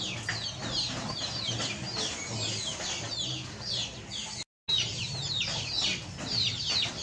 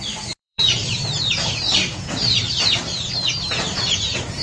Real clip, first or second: first